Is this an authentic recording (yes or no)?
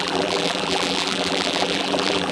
no